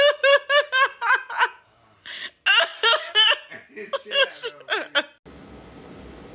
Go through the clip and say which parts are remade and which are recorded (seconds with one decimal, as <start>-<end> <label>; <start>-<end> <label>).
0.0-0.9 recorded; 0.9-1.6 remade; 1.6-6.3 recorded